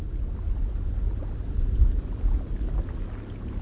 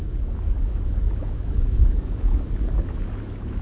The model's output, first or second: second